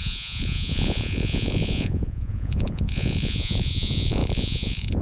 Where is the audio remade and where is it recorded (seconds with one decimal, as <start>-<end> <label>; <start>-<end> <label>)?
0.0-5.0 remade